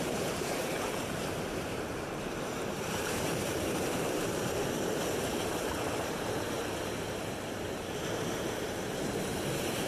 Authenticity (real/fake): fake